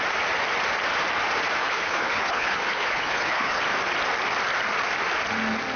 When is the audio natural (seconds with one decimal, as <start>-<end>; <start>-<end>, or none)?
0.0-1.6; 3.6-5.8

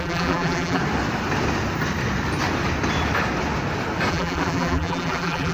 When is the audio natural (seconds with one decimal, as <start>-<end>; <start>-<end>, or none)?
0.8-4.1

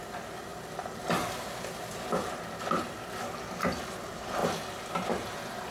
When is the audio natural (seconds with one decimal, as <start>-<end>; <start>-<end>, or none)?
0.0-5.7

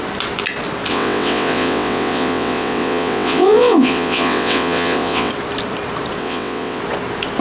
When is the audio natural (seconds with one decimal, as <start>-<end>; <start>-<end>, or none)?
0.0-0.9; 5.3-6.2; 6.8-7.4

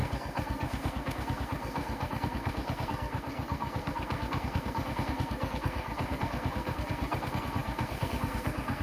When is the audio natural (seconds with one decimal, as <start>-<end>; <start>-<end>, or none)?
none

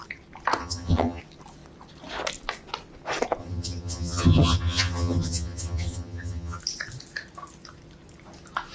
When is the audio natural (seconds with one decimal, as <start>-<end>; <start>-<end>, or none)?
0.0-0.6; 1.2-3.4; 6.6-8.7